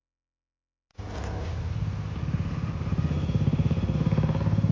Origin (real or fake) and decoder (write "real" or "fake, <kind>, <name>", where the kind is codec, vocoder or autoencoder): real